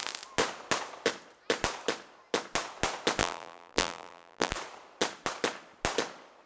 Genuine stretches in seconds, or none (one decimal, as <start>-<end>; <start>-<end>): 0.0-3.2; 4.5-6.5